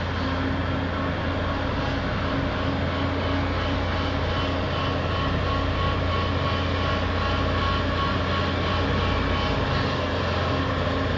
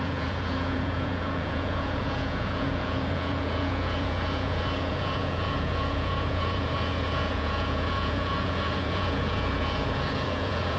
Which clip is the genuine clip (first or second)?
first